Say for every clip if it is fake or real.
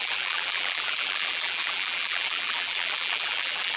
fake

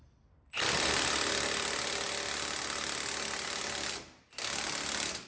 real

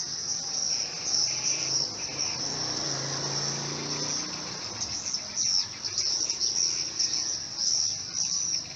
real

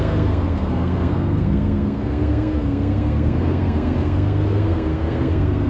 fake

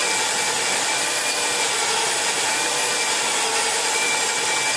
real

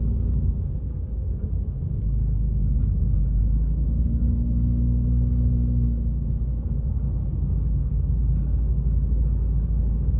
fake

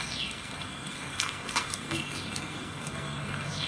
fake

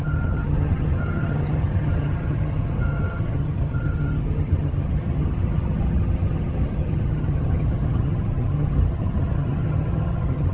fake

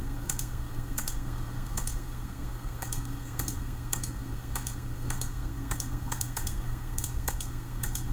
fake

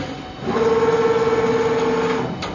real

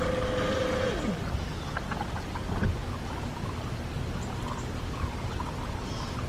real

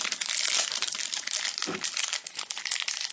real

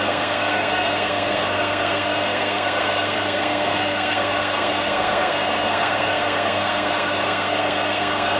fake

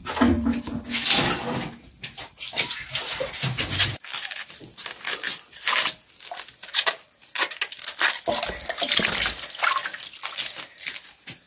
real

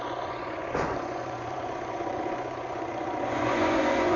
fake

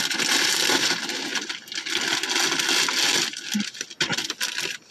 real